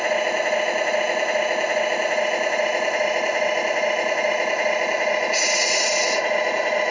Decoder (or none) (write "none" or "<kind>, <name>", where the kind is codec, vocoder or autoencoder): none